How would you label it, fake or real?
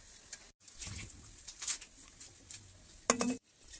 real